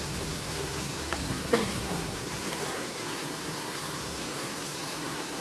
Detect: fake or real fake